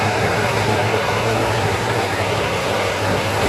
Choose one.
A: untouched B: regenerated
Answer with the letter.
B